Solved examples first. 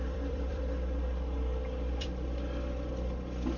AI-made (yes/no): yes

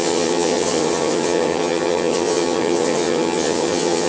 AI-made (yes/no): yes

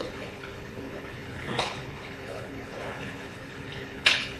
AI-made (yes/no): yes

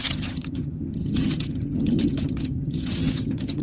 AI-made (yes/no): yes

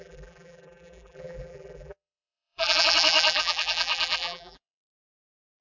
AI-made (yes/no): yes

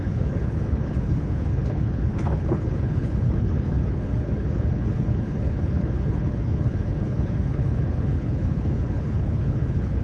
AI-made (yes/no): yes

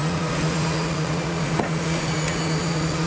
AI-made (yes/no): yes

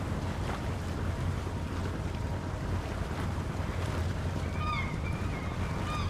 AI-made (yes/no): no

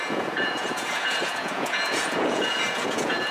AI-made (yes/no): yes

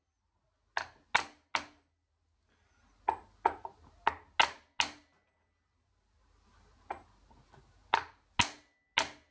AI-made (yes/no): no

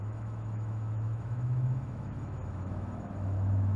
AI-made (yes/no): yes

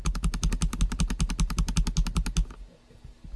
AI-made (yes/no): no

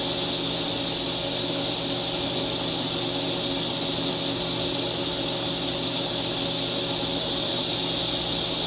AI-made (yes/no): no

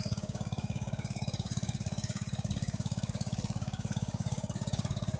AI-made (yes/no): yes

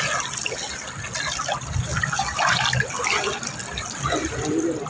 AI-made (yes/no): no